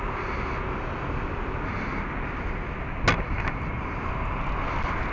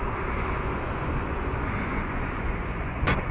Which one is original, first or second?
first